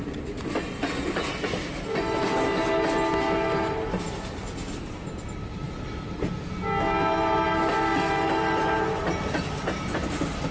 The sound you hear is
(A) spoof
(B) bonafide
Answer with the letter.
B